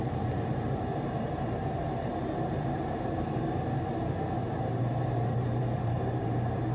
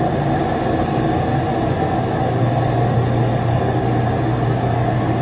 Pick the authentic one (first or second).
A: second